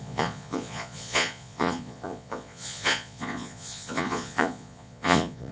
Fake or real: fake